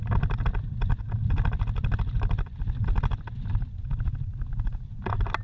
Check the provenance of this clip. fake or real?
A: real